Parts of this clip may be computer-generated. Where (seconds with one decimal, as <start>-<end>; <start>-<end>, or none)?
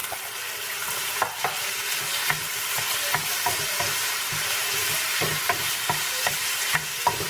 3.2-7.3